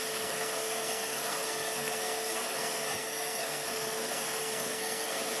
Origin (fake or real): fake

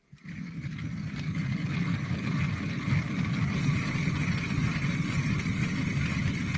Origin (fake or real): real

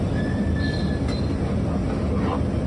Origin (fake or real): real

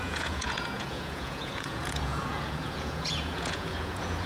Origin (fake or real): fake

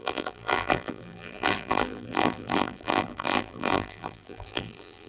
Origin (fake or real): fake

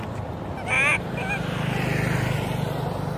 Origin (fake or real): real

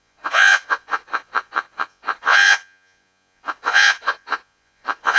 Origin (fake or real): fake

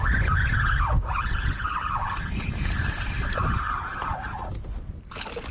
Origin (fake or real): real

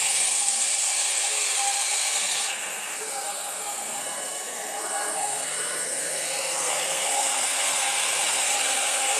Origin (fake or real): fake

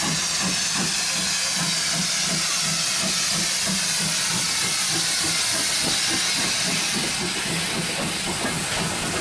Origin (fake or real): real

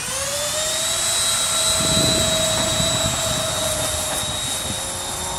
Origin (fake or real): real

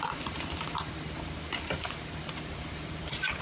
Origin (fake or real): fake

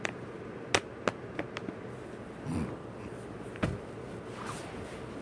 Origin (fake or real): real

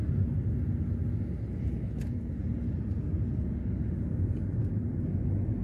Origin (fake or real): real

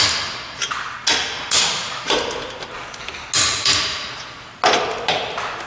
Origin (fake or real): real